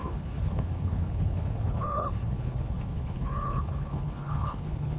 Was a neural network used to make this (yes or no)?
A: yes